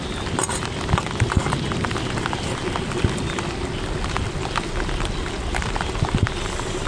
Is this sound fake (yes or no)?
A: no